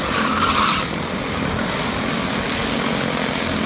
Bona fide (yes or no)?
yes